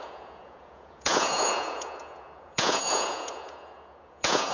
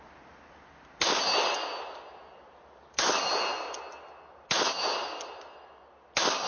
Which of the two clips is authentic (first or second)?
second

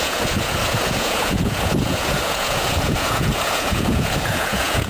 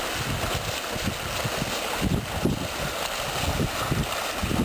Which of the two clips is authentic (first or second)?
second